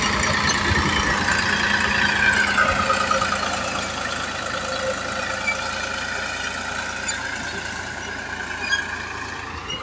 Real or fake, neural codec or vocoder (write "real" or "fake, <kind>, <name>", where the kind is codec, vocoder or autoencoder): real